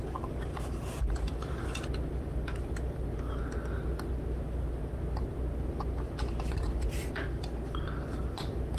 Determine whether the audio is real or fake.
real